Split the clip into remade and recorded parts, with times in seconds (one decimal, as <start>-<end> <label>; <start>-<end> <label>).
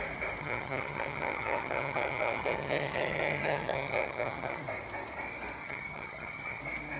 0.0-0.4 recorded; 0.4-4.6 remade; 4.6-5.6 recorded; 5.6-6.6 remade; 6.6-7.0 recorded